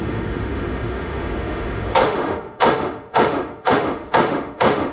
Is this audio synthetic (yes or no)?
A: yes